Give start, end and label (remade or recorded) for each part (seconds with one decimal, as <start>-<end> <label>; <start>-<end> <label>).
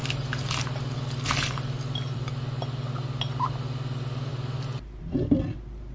0.0-5.9 recorded